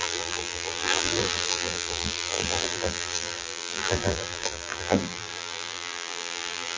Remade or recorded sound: remade